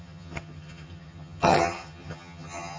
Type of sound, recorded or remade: remade